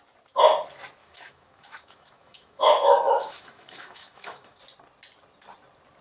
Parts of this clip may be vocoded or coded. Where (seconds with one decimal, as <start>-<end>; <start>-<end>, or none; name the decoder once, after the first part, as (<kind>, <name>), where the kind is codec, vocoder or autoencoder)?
1.0-4.6 (autoencoder, DAC-VAE)